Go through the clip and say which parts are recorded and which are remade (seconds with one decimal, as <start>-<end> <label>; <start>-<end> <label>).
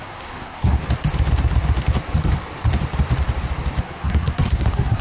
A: 0.0-0.8 remade; 0.8-3.8 recorded; 3.8-5.0 remade